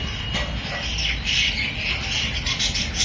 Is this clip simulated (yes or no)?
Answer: no